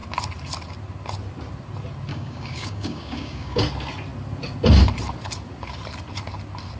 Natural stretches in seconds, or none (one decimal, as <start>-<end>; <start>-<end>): 0.0-2.1; 3.6-6.8